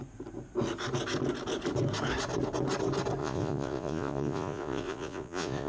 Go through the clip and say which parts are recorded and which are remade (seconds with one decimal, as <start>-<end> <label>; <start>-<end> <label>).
0.0-3.2 recorded; 3.2-5.7 remade

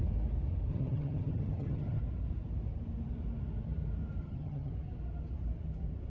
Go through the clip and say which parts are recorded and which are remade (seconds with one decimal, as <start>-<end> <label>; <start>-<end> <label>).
0.0-0.7 recorded; 0.7-2.0 remade; 2.0-4.2 recorded; 4.2-4.7 remade; 4.7-6.1 recorded